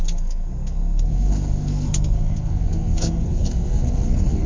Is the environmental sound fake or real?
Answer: fake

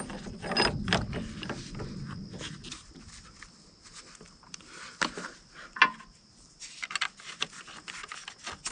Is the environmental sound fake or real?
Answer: real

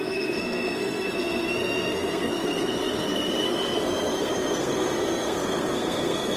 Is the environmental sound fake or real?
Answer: fake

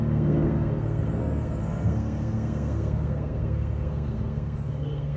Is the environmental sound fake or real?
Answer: fake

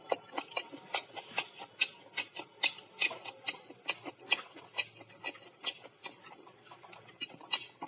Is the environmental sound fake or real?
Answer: real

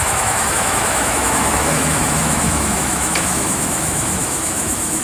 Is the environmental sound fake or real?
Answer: fake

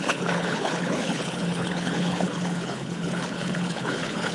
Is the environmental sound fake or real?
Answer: fake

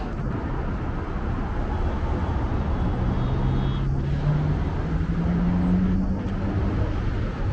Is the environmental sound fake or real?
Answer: real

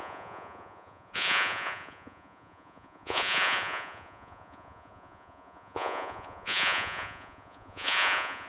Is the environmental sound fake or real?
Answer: fake